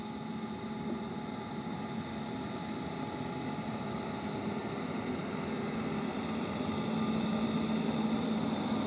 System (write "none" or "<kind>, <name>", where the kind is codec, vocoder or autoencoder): none